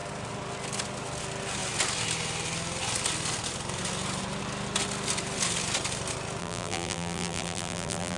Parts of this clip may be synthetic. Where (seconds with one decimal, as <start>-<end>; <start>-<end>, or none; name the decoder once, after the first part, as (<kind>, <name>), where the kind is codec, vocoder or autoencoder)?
6.4-8.2 (vocoder, BigVGAN v2)